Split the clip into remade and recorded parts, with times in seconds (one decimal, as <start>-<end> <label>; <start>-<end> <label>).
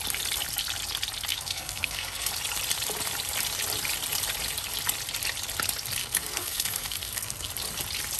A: 0.0-1.3 recorded; 1.3-2.3 remade; 2.3-6.0 recorded; 6.0-7.5 remade; 7.5-8.2 recorded